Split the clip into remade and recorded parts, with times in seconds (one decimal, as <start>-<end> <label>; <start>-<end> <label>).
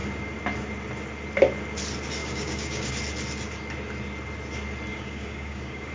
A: 0.0-2.2 recorded; 2.2-2.9 remade; 2.9-4.9 recorded; 4.9-5.9 remade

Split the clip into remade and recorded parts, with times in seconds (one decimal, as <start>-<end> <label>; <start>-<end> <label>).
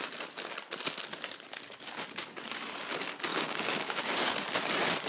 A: 0.0-3.3 recorded; 3.3-4.3 remade; 4.3-5.1 recorded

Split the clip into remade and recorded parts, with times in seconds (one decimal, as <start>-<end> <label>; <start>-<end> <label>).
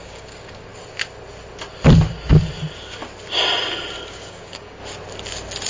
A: 0.0-0.7 remade; 0.7-4.1 recorded; 4.1-4.8 remade; 4.8-5.7 recorded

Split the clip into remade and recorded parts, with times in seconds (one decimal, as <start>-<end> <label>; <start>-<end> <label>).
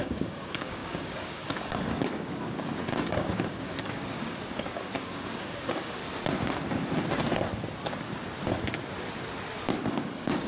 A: 0.0-6.0 remade; 6.0-9.9 recorded; 9.9-10.5 remade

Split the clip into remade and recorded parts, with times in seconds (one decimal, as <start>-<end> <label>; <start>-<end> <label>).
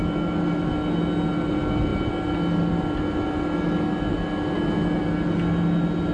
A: 0.0-6.1 recorded